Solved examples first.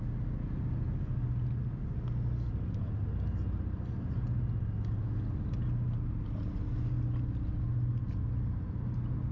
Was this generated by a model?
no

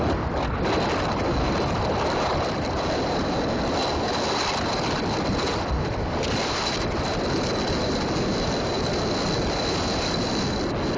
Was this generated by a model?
no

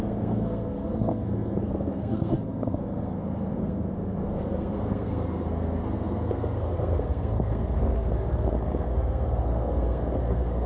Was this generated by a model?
yes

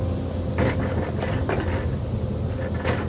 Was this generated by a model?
no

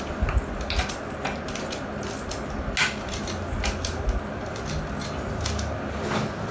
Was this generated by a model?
no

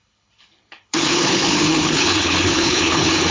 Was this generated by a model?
yes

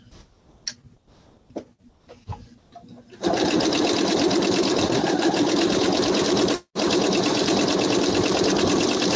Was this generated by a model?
no